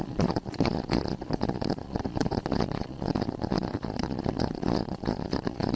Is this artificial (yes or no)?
yes